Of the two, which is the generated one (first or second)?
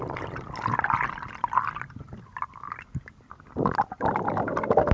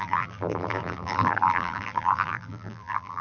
second